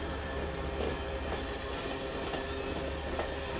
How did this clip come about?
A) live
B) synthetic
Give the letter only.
A